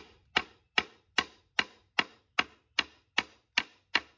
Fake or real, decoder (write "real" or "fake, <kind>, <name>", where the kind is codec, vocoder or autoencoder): real